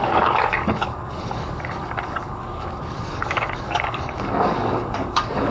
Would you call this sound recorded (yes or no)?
no